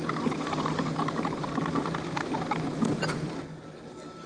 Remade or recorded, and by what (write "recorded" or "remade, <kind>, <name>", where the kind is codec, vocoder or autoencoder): recorded